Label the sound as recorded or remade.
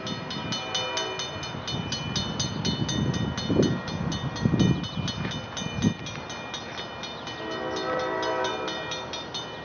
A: recorded